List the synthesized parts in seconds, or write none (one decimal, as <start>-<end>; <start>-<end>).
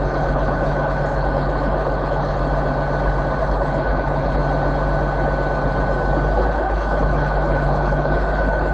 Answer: 0.0-2.4; 3.4-4.4; 6.5-8.7